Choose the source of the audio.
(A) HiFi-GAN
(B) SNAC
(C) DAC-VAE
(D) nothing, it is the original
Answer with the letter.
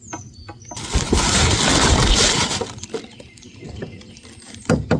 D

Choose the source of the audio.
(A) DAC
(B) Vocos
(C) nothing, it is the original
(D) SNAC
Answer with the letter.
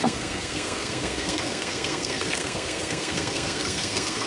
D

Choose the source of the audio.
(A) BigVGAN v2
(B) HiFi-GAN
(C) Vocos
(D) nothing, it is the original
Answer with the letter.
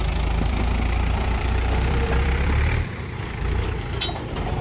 A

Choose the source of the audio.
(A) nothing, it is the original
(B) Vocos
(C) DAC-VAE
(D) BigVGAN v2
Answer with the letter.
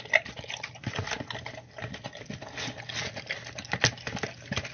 A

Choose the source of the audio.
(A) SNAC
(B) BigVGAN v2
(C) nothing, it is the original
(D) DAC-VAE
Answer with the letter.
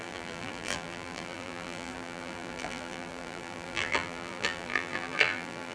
B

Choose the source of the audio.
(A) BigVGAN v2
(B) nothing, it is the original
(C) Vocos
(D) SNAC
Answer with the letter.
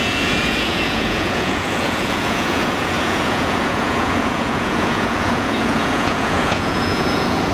C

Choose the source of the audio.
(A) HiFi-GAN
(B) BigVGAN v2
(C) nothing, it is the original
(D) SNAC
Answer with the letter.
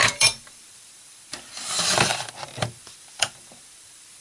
B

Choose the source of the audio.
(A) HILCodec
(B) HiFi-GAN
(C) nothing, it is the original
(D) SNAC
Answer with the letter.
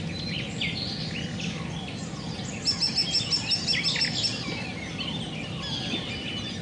C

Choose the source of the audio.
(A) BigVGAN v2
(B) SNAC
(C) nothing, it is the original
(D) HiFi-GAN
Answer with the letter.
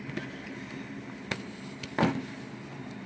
C